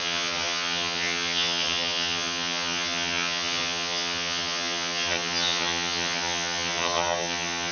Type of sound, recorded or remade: remade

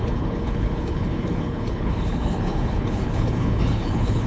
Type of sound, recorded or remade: remade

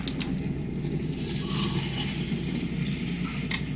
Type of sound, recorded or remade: recorded